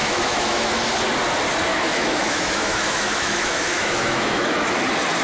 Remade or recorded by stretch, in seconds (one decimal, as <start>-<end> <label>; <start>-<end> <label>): 0.0-0.7 remade; 0.7-1.7 recorded; 1.7-4.8 remade; 4.8-5.2 recorded